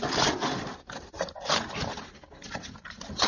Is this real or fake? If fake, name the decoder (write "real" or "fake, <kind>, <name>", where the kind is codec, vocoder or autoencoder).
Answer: real